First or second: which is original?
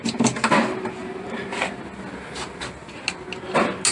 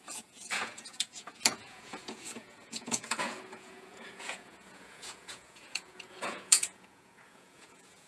first